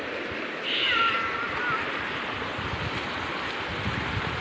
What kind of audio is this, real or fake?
real